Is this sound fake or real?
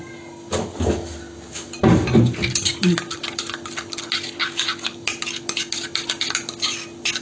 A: real